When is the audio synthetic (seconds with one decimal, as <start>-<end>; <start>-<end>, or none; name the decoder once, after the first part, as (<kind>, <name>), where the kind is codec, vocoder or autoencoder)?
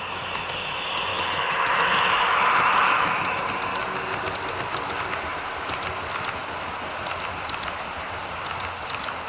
1.1-3.4 (autoencoder, DAC-VAE)